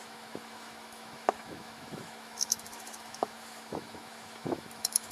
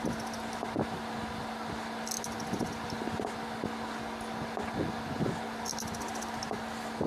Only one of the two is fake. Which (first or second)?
first